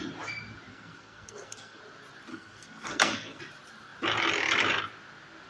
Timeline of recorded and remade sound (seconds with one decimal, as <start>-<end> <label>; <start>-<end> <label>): 0.0-0.7 recorded; 0.7-1.8 remade; 1.8-2.3 recorded; 2.3-3.4 remade; 3.4-5.5 recorded

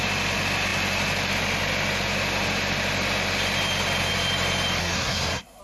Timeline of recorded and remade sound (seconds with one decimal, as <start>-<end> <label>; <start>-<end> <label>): 0.0-4.8 recorded; 4.8-5.6 remade

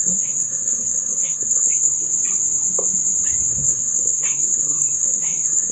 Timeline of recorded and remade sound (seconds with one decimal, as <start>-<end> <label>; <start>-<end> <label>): 0.0-2.1 remade; 2.1-3.5 recorded; 3.5-5.7 remade

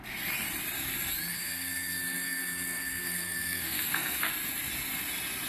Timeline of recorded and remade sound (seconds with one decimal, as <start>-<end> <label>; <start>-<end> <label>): 0.0-1.3 recorded; 1.3-4.3 remade; 4.3-5.5 recorded